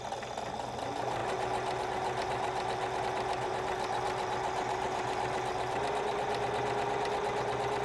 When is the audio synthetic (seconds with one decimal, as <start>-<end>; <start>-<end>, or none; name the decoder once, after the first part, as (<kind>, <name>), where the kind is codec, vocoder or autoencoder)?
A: none

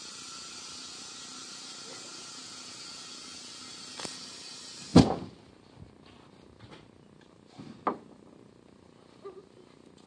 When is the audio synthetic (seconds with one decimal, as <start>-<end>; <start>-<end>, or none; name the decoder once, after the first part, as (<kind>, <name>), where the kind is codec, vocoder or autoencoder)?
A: none